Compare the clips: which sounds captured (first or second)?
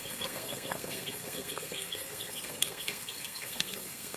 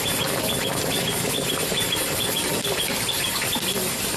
second